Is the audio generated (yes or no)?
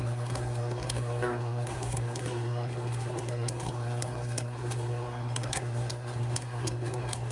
yes